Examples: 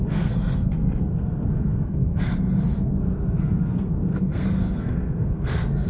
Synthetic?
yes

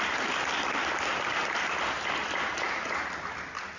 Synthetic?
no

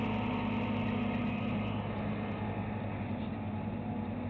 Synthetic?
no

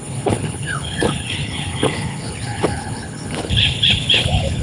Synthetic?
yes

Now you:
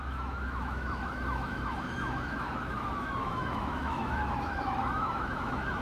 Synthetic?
yes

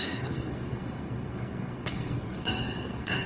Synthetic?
yes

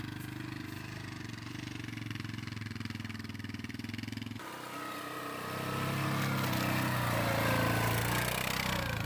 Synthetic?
no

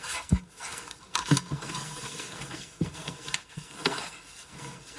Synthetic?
yes